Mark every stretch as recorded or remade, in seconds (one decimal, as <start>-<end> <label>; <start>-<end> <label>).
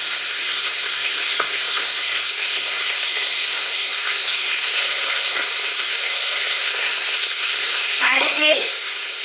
0.0-9.2 remade